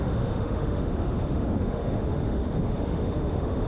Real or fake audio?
fake